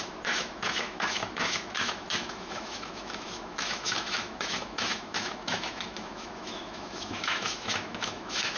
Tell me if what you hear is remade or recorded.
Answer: remade